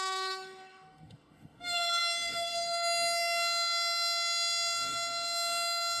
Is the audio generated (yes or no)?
yes